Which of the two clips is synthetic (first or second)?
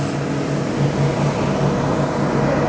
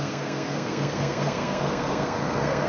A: second